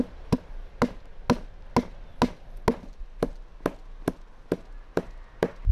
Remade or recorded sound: recorded